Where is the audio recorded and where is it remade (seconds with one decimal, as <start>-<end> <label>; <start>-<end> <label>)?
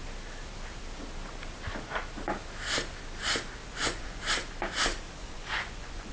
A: 0.0-3.6 recorded; 3.6-4.2 remade; 4.2-5.2 recorded; 5.2-6.1 remade